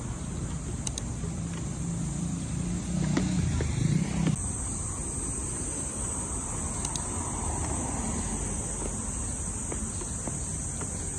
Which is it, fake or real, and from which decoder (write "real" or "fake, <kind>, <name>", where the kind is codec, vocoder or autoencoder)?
real